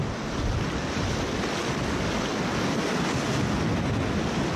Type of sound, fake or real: real